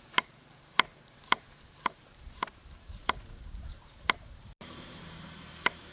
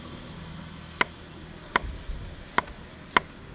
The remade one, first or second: first